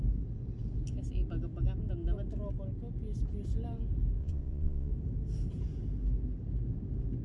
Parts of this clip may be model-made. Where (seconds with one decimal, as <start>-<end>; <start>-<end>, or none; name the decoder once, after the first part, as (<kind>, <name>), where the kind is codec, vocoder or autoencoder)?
4.2-4.9 (vocoder, Vocos)